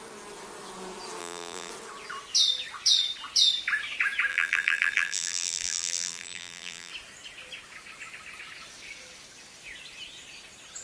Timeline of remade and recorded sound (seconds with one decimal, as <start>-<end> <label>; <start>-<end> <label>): 0.0-1.2 recorded; 1.2-1.7 remade; 1.7-4.3 recorded; 4.3-6.9 remade; 6.9-10.8 recorded